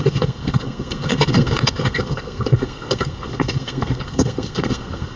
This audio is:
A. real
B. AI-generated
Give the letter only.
B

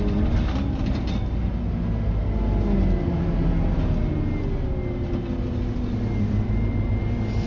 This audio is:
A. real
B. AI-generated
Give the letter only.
A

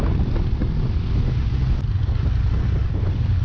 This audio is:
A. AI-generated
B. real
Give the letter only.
B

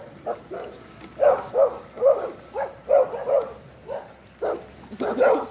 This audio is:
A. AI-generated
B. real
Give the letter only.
B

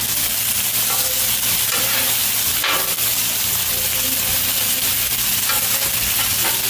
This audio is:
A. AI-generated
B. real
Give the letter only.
B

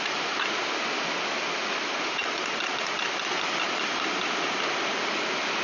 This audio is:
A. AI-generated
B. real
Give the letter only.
B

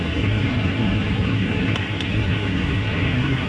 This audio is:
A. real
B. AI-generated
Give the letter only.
B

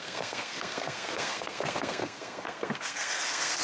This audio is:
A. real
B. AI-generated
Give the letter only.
B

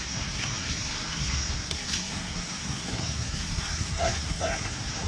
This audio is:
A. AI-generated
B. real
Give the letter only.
A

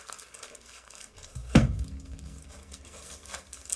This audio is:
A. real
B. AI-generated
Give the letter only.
B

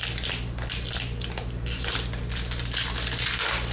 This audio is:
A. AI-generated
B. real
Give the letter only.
B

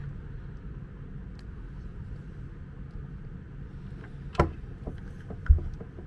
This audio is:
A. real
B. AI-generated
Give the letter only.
A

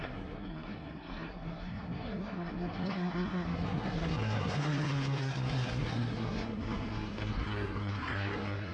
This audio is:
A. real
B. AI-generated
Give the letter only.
B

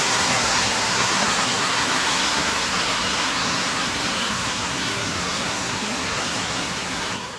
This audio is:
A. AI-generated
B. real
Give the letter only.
A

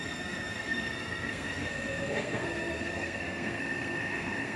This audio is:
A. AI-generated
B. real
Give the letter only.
A